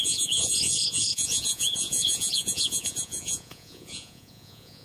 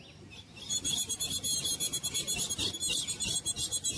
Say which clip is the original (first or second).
second